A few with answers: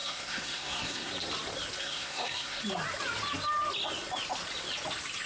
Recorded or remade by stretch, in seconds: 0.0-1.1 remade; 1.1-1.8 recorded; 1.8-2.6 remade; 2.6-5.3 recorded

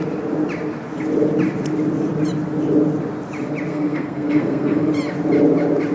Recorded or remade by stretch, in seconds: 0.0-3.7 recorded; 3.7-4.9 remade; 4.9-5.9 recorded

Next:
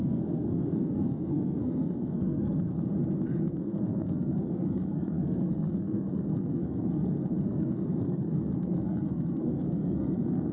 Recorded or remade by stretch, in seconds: 0.0-2.7 remade; 2.7-3.4 recorded; 3.4-10.5 remade